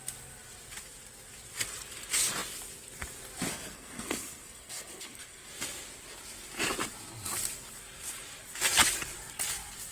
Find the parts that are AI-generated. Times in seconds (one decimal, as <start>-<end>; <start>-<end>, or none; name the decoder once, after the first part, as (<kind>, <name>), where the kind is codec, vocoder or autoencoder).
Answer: 3.5-5.5 (codec, SNAC)